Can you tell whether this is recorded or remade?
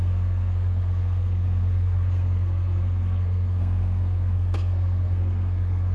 remade